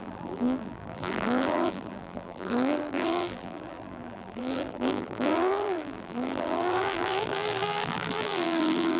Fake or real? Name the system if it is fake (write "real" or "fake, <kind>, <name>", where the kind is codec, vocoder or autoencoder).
fake, vocoder, BigVGAN v2